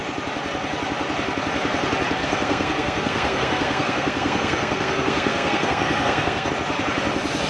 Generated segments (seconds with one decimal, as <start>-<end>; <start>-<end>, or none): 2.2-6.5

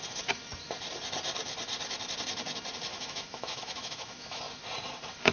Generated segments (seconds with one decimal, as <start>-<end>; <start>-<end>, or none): 2.9-4.4

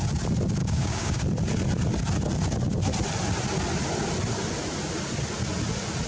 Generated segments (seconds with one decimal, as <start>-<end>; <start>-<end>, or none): 0.6-1.2

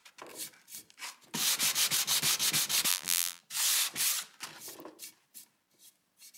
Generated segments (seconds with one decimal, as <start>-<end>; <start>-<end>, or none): 2.9-3.4

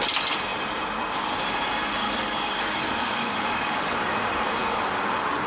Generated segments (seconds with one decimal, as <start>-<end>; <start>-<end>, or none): 2.0-4.0

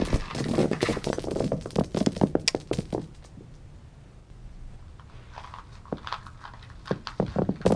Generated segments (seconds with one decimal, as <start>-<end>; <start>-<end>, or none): 0.6-1.2; 4.2-4.7

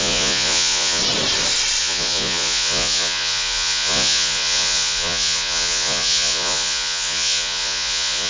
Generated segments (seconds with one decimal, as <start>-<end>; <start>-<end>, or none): 0.0-1.0; 1.8-8.3